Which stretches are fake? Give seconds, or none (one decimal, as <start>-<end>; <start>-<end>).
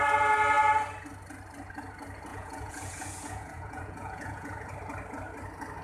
2.3-4.7